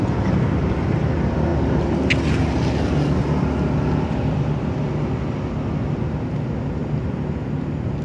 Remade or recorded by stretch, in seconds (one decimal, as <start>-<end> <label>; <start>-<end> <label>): 0.0-8.0 recorded